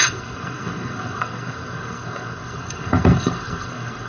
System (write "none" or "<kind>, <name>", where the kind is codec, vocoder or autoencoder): codec, SNAC